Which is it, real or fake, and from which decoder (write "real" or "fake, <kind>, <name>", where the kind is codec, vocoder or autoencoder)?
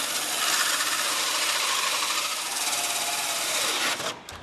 real